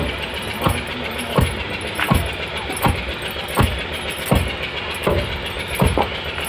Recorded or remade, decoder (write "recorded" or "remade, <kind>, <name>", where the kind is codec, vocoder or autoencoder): recorded